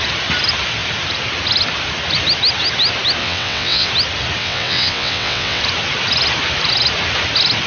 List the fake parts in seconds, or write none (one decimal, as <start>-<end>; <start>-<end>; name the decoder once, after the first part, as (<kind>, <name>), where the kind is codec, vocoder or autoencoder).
3.2-3.9 (vocoder, WaveNeXt); 4.4-5.6